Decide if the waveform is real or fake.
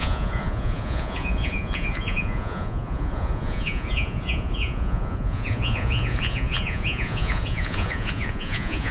fake